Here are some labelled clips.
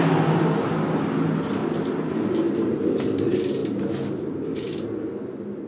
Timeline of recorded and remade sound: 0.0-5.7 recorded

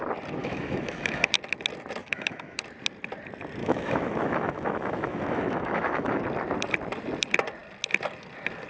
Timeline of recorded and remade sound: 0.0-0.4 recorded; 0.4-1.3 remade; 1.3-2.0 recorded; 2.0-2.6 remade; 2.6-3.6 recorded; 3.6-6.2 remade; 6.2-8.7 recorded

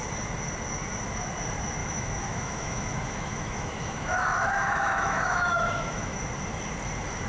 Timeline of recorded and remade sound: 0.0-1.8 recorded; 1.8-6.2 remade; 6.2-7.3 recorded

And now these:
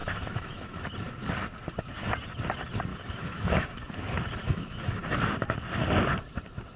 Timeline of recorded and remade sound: 0.0-0.9 remade; 0.9-2.9 recorded; 2.9-3.9 remade; 3.9-4.4 recorded; 4.4-5.0 remade; 5.0-6.8 recorded

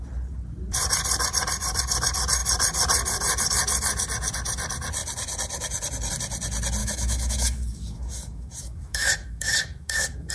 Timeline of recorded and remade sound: 0.0-6.8 recorded; 6.8-10.3 remade